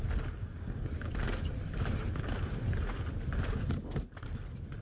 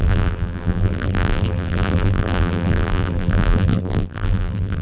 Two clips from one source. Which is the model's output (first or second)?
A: second